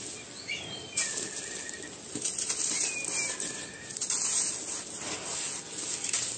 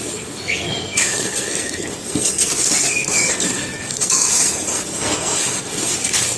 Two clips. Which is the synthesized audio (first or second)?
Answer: second